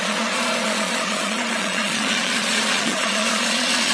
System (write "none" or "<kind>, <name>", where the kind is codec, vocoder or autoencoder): vocoder, Vocos